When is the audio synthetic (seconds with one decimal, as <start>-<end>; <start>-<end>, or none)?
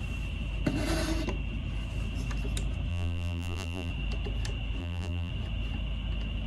2.9-3.9; 4.8-5.3